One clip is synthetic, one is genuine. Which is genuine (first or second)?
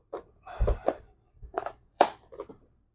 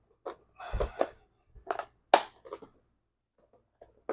second